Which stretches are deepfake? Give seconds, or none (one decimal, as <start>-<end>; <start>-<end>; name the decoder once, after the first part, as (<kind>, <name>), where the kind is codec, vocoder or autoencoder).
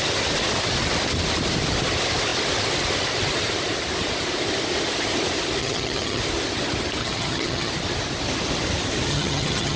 5.6-6.2 (vocoder, HiFi-GAN); 7.0-7.7; 9.1-9.8